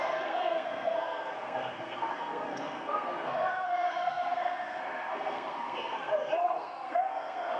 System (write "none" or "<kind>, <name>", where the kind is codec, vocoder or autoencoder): codec, SNAC